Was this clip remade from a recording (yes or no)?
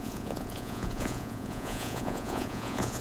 yes